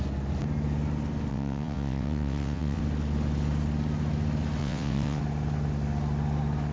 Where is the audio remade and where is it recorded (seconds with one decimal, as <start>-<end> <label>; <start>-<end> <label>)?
0.0-1.3 recorded; 1.3-2.8 remade; 2.8-4.6 recorded; 4.6-5.2 remade; 5.2-6.7 recorded